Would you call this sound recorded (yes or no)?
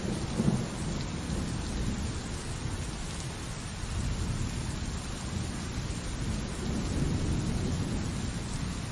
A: yes